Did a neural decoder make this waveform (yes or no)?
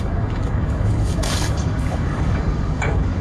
yes